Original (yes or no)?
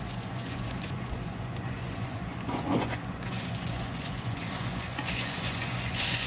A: no